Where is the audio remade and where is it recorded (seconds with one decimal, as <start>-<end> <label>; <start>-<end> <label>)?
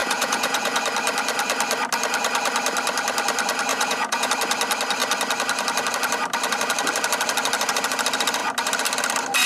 0.0-0.8 remade; 0.8-3.7 recorded; 3.7-4.3 remade; 4.3-9.5 recorded